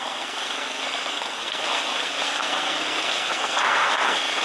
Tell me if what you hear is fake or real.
fake